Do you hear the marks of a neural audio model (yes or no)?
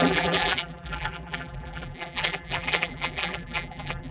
yes